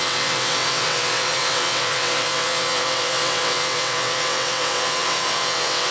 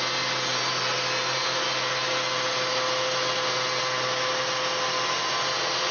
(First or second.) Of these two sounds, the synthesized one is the first